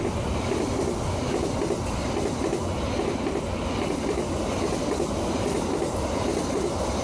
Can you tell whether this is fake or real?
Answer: real